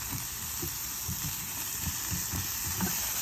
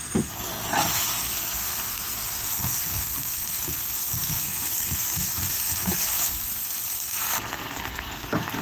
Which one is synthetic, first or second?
second